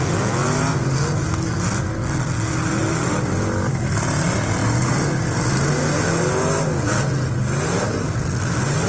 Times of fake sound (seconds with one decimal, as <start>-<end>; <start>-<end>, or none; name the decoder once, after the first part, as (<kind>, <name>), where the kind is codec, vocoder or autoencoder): 4.6-5.7 (vocoder, BigVGAN v2)